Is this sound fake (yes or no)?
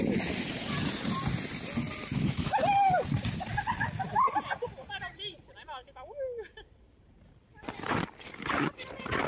no